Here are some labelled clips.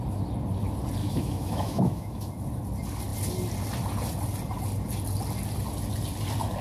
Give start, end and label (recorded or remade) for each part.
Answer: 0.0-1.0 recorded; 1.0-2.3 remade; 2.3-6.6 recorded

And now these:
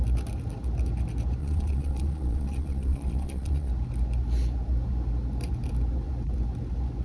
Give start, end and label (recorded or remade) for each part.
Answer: 0.0-1.4 recorded; 1.4-3.7 remade; 3.7-7.0 recorded

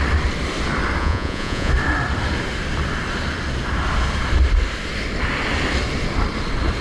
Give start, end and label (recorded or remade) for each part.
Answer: 0.0-1.0 recorded; 1.0-1.7 remade; 1.7-6.8 recorded